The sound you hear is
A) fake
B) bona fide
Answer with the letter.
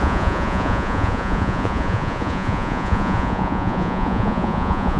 A